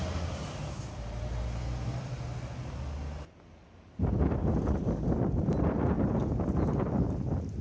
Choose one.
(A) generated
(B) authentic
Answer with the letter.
B